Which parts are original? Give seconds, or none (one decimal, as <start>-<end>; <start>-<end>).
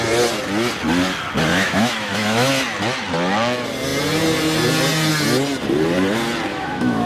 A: 0.0-1.5; 2.5-6.5